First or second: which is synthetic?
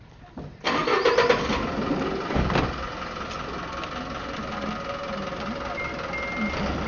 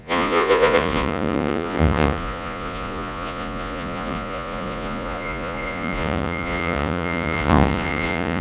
second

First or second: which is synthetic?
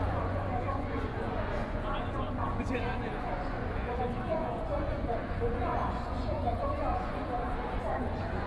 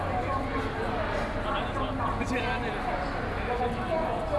first